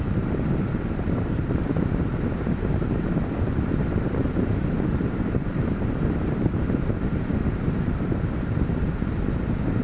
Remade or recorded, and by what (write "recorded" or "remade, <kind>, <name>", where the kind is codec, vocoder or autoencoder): remade, vocoder, BigVGAN v2